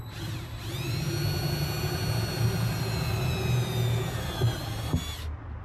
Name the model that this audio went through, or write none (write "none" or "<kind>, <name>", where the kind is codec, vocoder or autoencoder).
none